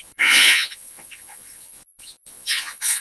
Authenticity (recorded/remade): remade